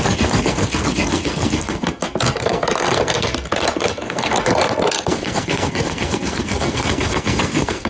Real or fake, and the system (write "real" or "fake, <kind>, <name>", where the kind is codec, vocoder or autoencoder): fake, codec, SNAC